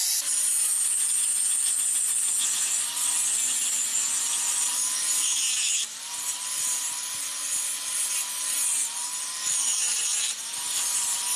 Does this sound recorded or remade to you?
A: recorded